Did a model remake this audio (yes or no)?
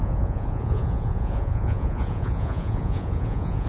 yes